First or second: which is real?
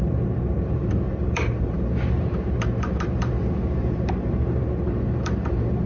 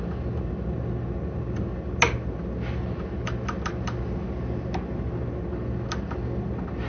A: second